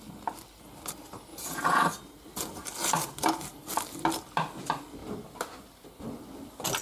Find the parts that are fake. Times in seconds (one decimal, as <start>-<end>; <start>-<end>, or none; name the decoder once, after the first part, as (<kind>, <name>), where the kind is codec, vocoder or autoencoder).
1.3-1.8 (vocoder, Vocos)